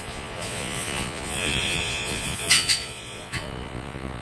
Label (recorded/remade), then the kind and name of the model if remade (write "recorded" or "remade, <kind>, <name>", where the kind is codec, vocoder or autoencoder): remade, vocoder, Vocos